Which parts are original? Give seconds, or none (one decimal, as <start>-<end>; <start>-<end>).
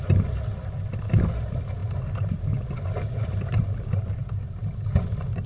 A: 0.0-1.8; 4.2-5.5